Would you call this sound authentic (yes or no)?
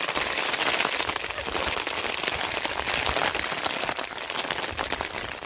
yes